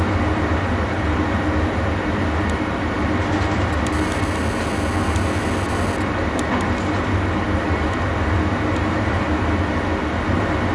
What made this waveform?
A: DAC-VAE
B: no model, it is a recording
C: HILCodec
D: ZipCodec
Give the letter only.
B